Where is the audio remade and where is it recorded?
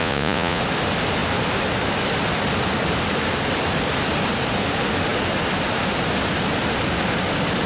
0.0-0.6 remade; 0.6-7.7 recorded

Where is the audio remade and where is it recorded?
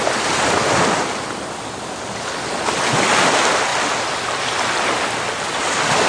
0.0-6.1 recorded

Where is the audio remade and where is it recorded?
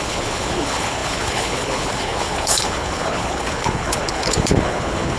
0.0-5.2 remade